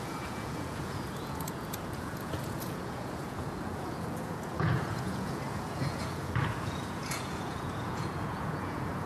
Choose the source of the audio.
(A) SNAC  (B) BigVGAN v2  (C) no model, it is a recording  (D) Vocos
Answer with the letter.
D